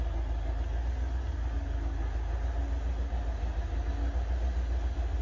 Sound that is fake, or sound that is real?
real